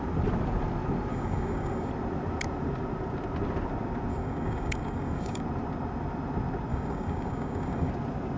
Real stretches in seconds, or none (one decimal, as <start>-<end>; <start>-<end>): 0.0-1.1; 1.9-4.1; 5.4-6.7; 7.9-8.4